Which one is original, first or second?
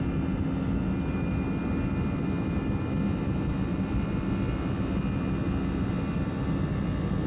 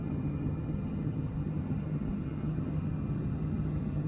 first